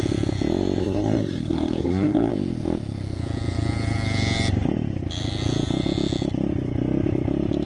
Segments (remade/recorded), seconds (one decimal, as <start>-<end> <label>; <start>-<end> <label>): 0.0-0.8 recorded; 0.8-2.3 remade; 2.3-7.7 recorded